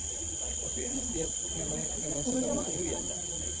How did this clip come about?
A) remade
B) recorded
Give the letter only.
A